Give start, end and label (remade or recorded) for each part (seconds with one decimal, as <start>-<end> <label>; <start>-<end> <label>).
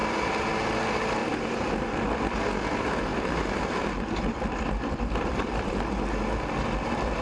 0.0-0.5 remade; 0.5-1.2 recorded; 1.2-2.4 remade; 2.4-3.1 recorded; 3.1-5.7 remade; 5.7-7.2 recorded